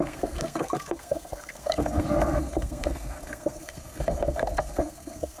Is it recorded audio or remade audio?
remade